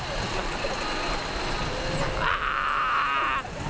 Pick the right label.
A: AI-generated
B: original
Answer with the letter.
B